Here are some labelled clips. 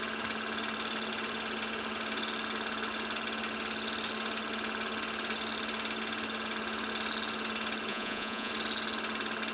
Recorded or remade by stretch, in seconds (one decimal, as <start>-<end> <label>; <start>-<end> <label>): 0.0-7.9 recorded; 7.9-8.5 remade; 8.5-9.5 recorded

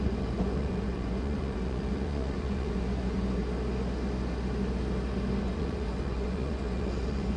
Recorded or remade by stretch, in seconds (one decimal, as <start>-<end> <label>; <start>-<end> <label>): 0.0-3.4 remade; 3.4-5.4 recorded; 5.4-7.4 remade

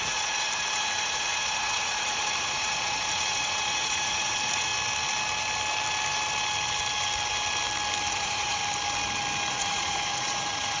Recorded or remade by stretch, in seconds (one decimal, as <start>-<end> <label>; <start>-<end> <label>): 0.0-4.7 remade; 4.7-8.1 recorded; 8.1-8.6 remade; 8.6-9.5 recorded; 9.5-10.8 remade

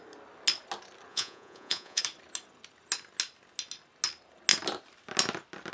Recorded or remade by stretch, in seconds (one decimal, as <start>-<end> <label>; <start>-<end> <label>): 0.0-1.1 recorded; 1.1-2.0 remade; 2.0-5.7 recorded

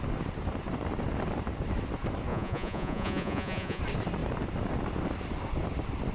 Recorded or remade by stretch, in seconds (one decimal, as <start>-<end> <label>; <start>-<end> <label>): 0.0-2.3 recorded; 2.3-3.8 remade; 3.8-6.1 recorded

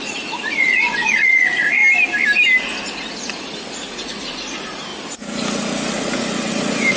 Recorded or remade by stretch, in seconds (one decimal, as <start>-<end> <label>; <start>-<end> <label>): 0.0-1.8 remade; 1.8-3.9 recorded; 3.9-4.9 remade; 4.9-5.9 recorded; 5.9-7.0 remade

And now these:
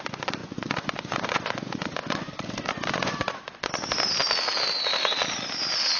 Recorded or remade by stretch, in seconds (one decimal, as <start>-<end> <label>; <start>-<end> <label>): 0.0-0.4 recorded; 0.4-3.7 remade; 3.7-6.0 recorded